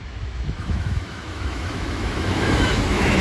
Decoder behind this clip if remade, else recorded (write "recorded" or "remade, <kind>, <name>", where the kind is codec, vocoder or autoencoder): remade, autoencoder, DAC-VAE